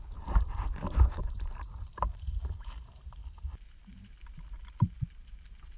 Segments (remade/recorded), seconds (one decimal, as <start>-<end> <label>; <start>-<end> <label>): 0.0-3.2 remade; 3.2-4.3 recorded; 4.3-5.8 remade

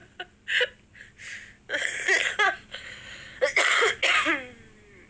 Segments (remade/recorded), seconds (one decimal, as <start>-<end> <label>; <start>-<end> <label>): 0.0-3.1 recorded; 3.1-4.0 remade; 4.0-5.1 recorded

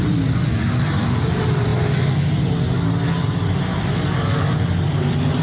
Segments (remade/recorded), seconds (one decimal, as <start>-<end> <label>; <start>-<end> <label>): 0.0-1.7 remade; 1.7-4.9 recorded; 4.9-5.4 remade

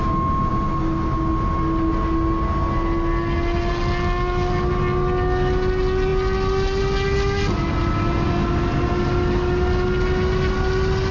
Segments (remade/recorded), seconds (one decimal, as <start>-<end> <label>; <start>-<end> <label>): 0.0-11.1 recorded